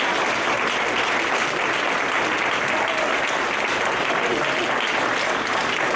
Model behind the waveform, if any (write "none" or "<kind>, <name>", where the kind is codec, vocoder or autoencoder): none